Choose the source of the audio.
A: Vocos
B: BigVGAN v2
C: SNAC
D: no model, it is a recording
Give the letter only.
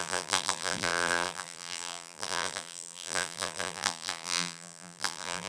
B